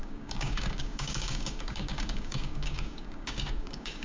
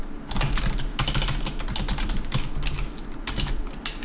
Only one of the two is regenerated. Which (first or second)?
first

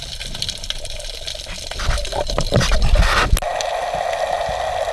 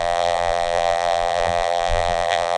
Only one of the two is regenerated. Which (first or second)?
second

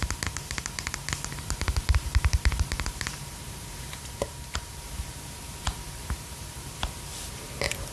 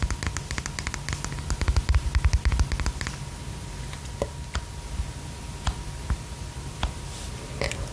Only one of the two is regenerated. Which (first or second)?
first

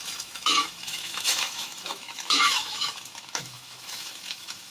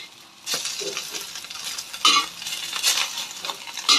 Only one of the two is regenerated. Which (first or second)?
first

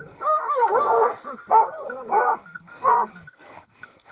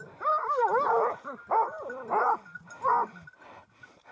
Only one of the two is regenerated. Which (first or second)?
first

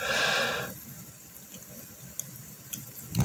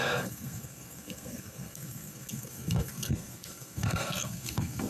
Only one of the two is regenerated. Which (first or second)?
second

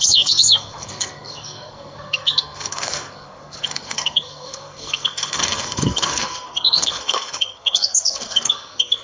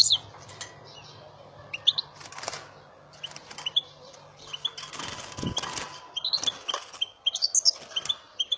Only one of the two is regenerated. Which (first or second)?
first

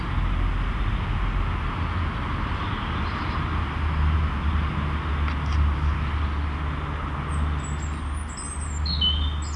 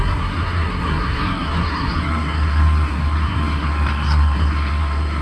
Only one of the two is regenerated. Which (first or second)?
second